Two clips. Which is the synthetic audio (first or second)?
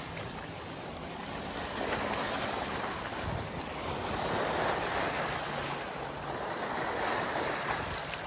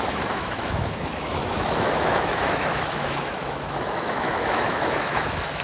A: second